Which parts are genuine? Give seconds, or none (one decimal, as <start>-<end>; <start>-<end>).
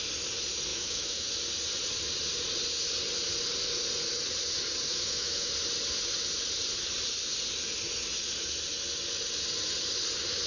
0.0-0.7; 1.3-4.9; 5.5-10.5